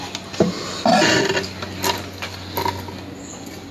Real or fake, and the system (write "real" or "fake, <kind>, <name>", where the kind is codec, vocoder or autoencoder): real